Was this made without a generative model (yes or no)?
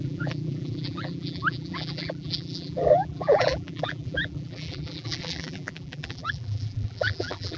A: no